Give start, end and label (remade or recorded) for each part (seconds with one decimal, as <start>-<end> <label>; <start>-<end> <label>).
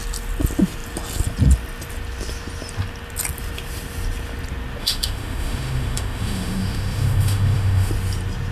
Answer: 0.0-4.8 recorded; 4.8-7.9 remade; 7.9-8.5 recorded